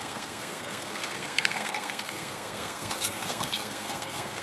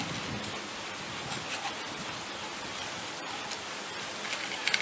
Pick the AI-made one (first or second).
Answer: first